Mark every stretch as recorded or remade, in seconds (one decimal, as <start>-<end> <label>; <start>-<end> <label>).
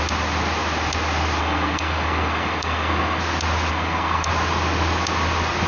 0.0-1.4 recorded; 1.4-3.2 remade; 3.2-3.7 recorded; 3.7-4.3 remade; 4.3-5.7 recorded